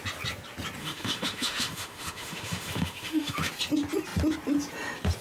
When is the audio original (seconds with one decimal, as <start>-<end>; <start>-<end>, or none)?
0.0-0.8; 3.5-5.2